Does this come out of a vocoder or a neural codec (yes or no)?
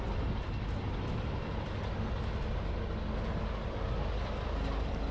no